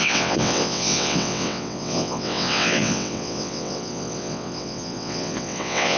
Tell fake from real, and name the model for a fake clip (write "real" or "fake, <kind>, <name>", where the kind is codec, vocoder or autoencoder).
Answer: fake, vocoder, WaveNeXt